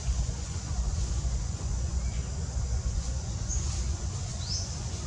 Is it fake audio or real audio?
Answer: fake